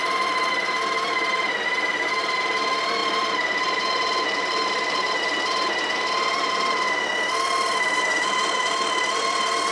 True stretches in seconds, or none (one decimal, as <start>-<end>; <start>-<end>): 0.0-9.7